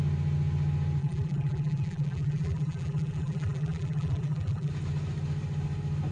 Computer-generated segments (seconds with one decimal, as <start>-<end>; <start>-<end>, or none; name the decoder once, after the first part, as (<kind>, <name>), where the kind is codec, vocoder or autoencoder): 1.0-4.7 (vocoder, BigVGAN v2)